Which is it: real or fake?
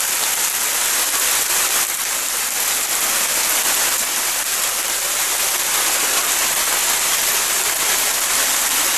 real